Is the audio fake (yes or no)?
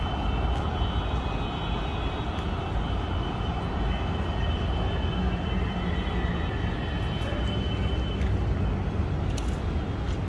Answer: no